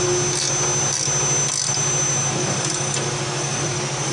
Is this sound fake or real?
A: real